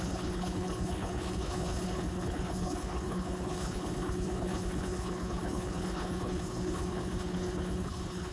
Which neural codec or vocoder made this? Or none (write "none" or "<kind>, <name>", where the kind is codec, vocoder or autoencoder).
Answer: codec, HILCodec